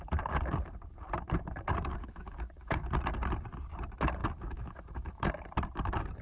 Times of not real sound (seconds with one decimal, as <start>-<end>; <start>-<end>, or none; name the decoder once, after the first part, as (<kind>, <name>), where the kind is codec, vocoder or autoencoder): 1.9-2.9 (autoencoder, DAC-VAE); 4.2-5.3